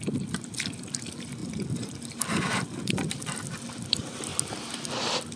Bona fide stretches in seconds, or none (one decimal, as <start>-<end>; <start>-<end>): 4.3-4.9